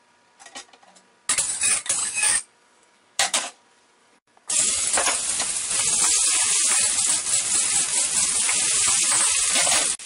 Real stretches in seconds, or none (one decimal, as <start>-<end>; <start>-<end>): 0.0-2.0; 3.6-4.0; 4.9-10.1